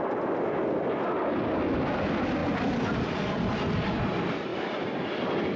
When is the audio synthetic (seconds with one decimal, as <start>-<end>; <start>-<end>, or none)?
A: none